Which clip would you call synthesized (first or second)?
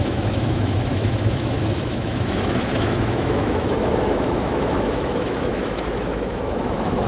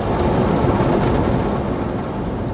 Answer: first